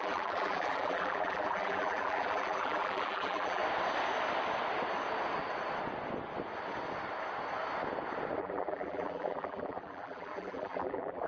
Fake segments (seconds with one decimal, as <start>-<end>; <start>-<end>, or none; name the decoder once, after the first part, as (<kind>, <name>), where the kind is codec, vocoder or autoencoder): 0.0-3.6 (vocoder, BigVGAN v2); 8.4-11.3